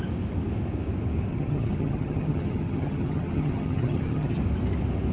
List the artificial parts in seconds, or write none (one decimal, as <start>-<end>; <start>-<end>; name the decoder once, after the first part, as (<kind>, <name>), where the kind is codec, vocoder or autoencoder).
1.3-4.4 (vocoder, HiFi-GAN)